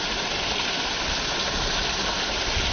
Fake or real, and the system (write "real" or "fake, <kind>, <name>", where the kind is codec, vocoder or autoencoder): real